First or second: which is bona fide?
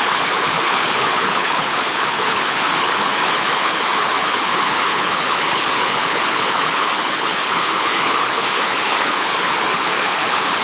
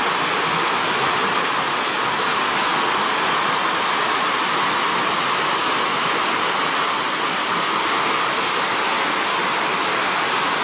second